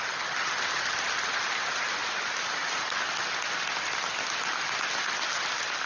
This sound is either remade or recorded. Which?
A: recorded